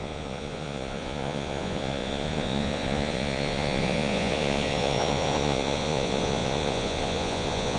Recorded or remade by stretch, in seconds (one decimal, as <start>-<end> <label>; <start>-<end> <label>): 0.0-7.8 remade